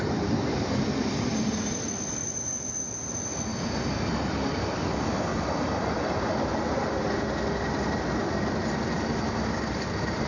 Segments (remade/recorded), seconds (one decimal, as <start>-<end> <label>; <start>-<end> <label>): 0.0-10.3 recorded